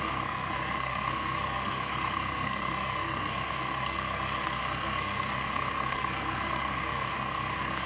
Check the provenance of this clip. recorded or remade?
remade